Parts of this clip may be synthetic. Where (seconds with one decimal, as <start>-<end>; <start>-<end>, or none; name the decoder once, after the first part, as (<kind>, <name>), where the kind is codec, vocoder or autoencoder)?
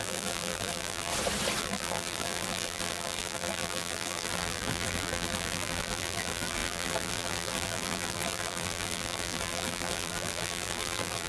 0.0-1.1 (vocoder, BigVGAN v2); 1.6-11.3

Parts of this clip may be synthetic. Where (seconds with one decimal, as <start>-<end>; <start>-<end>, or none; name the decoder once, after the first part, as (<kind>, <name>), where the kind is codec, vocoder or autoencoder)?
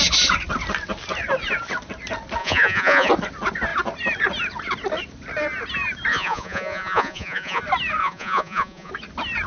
2.4-3.1 (vocoder, Vocos); 6.1-7.6; 8.0-8.9